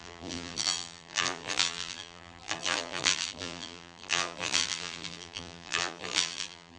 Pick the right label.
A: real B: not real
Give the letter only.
B